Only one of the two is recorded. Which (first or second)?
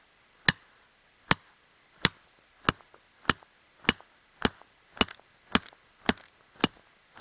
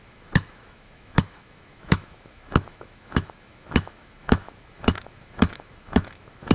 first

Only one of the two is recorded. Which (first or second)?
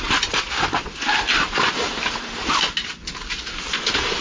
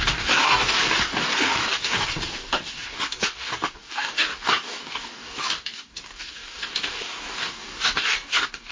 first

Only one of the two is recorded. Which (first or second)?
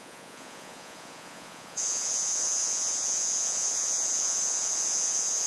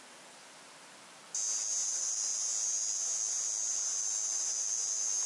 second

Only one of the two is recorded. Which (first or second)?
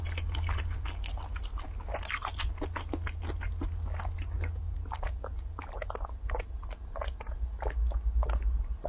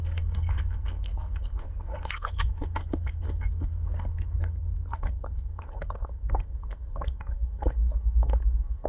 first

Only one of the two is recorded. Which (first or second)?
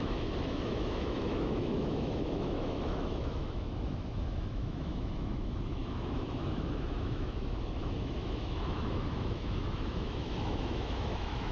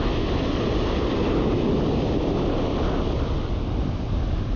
second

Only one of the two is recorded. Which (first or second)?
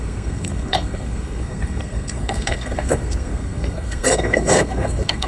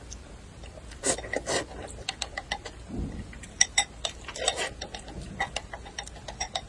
second